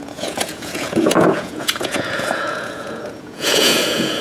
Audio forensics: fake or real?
fake